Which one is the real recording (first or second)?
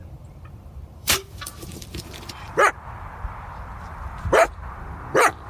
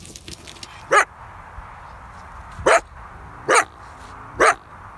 second